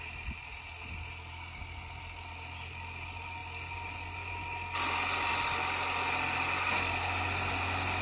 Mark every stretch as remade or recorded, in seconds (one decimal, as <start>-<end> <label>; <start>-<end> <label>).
0.0-8.0 recorded